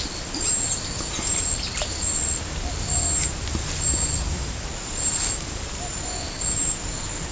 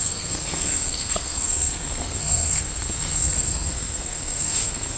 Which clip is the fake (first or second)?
second